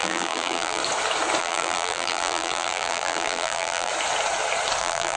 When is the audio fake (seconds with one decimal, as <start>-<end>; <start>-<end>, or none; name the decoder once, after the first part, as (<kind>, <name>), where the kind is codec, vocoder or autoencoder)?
0.0-0.8 (vocoder, BigVGAN v2); 1.4-3.9; 4.8-5.2